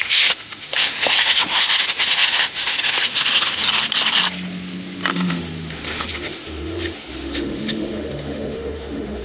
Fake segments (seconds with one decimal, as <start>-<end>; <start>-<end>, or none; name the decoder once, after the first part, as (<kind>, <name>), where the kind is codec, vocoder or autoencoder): 0.0-3.6 (autoencoder, DAC-VAE); 5.1-9.2